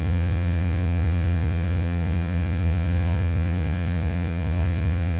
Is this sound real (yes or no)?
no